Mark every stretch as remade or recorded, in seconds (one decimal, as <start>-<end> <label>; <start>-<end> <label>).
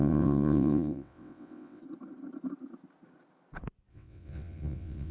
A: 0.0-1.8 remade; 1.8-3.9 recorded; 3.9-5.1 remade